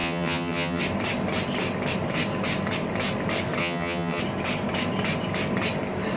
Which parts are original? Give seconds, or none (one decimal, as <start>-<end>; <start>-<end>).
0.8-3.6; 4.2-6.2